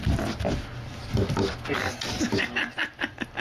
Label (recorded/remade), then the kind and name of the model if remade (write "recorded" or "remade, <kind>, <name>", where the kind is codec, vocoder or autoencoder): recorded